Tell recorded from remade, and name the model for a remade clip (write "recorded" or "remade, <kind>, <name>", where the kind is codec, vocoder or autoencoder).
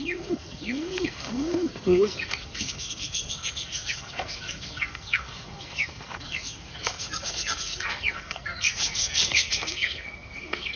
remade, codec, SNAC